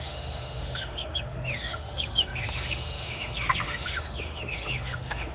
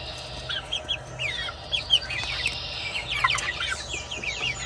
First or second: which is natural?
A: second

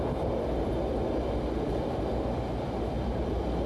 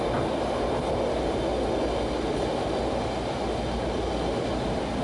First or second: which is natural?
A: second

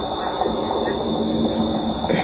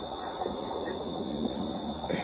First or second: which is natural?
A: first